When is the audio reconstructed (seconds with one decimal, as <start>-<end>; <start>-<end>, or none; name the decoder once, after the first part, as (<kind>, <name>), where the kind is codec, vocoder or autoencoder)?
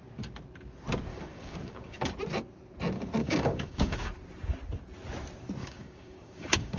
1.1-2.1 (codec, DAC); 3.2-4.1; 5.6-6.8